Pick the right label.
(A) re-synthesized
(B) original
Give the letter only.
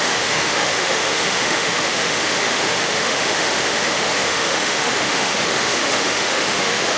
A